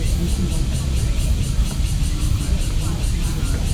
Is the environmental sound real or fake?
real